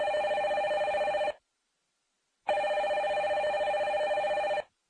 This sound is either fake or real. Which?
real